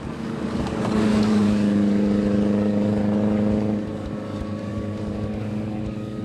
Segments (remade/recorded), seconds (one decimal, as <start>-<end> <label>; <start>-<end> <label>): 0.0-6.2 remade